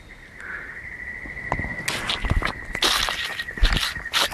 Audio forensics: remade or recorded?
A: recorded